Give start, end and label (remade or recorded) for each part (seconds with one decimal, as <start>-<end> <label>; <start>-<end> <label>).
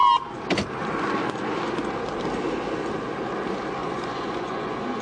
0.0-3.8 recorded; 3.8-5.0 remade